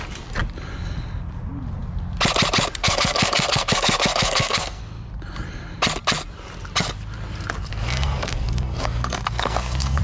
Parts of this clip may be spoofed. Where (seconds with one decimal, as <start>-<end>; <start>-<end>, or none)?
2.8-4.8; 7.7-10.0